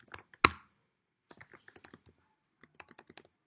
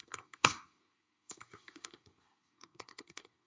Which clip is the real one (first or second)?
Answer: first